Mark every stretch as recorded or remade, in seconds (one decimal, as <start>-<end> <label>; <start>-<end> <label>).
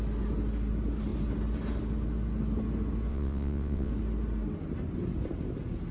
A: 0.0-3.1 recorded; 3.1-3.9 remade; 3.9-5.9 recorded